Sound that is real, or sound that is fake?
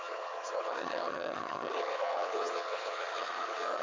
fake